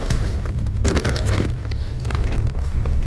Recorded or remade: remade